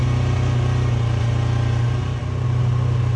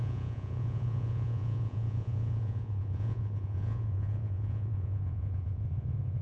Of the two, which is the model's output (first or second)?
second